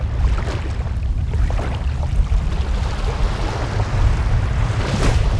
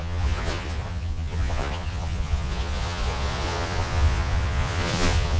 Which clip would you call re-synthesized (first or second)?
second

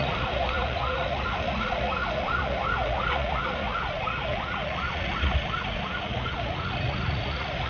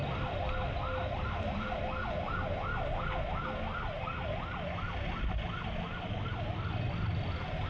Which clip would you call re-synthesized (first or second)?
first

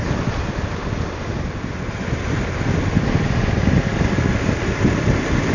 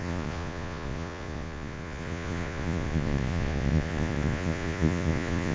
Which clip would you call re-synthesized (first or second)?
second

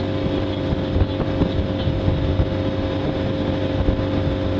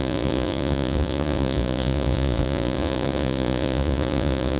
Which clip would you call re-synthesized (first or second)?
second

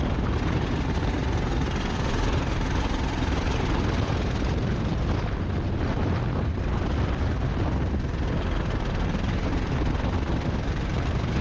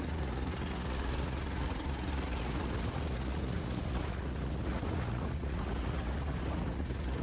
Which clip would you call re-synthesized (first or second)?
second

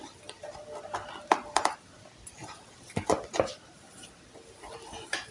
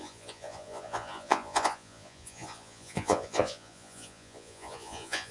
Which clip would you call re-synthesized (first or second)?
second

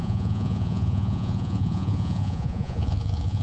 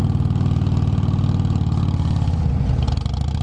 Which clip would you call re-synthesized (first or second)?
first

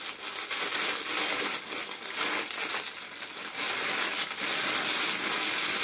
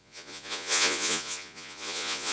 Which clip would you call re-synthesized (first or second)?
second